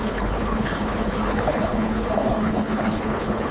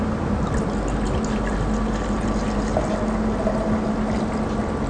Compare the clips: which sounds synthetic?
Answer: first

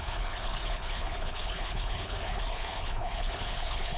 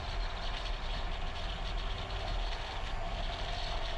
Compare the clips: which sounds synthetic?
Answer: first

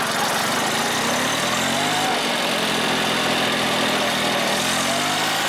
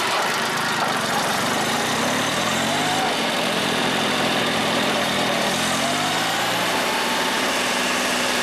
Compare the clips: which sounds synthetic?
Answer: second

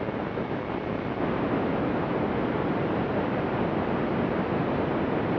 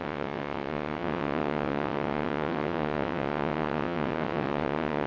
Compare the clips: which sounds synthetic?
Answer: second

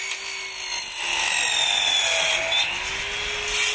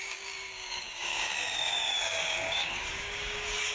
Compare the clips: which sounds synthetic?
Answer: second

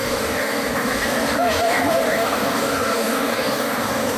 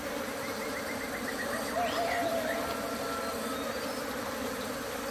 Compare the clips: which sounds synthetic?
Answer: first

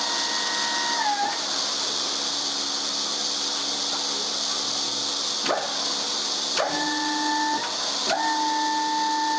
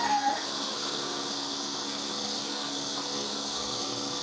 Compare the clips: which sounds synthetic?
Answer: second